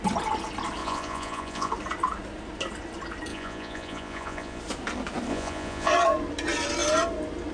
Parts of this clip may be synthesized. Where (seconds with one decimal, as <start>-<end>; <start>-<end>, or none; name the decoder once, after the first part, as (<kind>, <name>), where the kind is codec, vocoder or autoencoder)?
0.8-1.7 (vocoder, Vocos); 3.3-4.6; 5.3-5.9